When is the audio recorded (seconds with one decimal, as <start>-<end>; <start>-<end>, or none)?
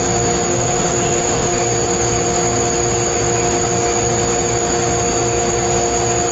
0.0-0.5; 1.6-6.3